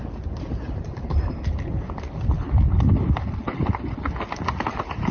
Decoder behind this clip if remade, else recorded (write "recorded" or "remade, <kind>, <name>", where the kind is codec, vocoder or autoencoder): recorded